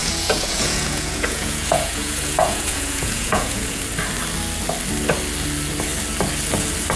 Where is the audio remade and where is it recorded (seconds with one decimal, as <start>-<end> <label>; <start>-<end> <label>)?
0.0-3.8 remade; 3.8-7.0 recorded